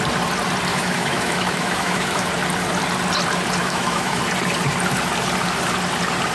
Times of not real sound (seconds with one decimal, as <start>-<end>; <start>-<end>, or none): 0.7-2.3; 3.6-4.2